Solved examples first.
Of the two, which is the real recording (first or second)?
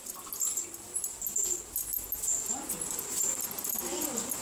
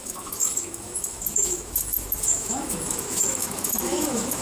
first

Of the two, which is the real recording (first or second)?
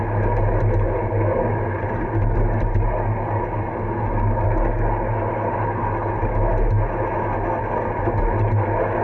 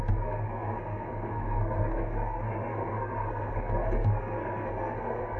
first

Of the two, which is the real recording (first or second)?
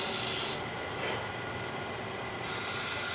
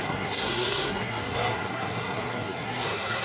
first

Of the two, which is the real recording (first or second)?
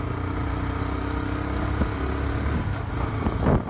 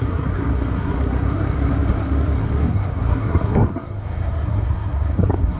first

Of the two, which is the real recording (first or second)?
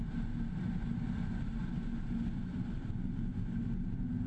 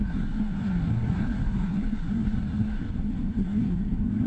first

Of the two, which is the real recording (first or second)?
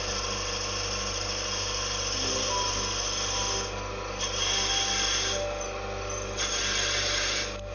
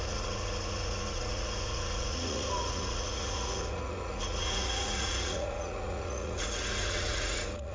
first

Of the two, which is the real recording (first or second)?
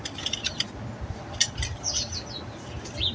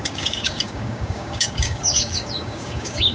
first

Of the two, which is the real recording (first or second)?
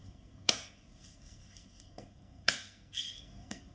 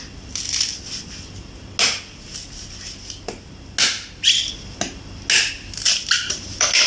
second